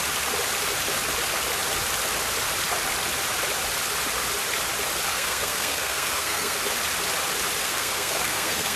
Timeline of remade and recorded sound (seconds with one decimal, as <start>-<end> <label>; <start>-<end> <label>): 0.0-5.1 recorded; 5.1-6.6 remade; 6.6-7.6 recorded; 7.6-8.8 remade